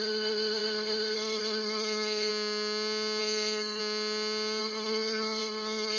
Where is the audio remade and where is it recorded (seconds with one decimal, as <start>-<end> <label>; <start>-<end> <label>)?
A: 0.0-2.3 remade; 2.3-3.2 recorded; 3.2-3.8 remade; 3.8-4.6 recorded; 4.6-6.0 remade